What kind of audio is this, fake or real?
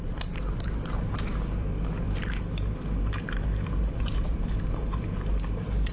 fake